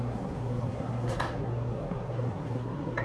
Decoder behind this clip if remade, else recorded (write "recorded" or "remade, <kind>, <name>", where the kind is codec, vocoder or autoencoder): remade, codec, SNAC